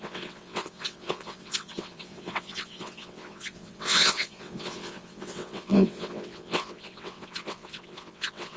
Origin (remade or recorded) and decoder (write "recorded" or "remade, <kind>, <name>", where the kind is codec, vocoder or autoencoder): remade, vocoder, WaveNeXt